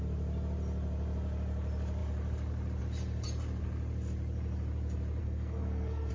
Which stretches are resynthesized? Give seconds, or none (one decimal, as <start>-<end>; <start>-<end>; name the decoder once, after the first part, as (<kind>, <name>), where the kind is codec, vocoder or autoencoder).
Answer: 5.2-6.1 (codec, SNAC)